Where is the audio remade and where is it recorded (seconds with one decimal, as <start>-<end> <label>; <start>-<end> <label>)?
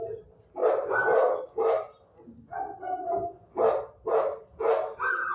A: 0.0-5.3 recorded